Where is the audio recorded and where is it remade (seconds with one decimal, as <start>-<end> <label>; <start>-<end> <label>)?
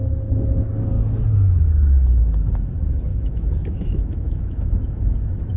0.0-3.1 recorded; 3.1-5.0 remade; 5.0-5.6 recorded